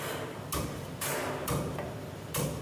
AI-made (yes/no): no